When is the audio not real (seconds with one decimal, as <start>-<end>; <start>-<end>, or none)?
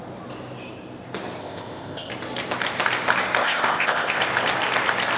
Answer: 1.4-2.1; 3.4-4.2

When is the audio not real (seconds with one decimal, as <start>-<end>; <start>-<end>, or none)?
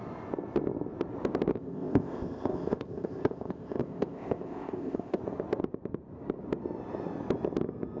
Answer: 1.5-5.2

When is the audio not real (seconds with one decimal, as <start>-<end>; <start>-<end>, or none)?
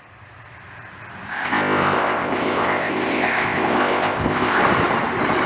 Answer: 1.3-4.6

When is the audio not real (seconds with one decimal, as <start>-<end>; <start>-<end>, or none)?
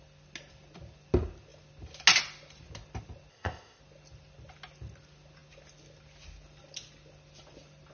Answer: 3.3-3.8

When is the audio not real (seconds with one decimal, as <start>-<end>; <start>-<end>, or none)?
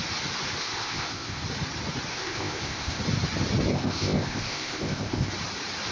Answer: 0.6-1.4; 2.1-3.0; 3.7-5.3